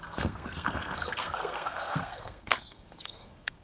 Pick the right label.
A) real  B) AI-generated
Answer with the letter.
B